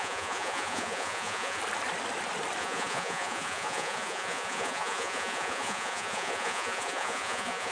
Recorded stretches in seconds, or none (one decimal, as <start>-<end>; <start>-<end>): 1.6-2.6

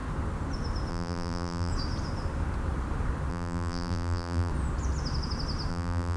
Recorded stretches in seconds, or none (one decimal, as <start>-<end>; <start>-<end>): 0.0-0.9; 1.7-3.3; 4.5-5.7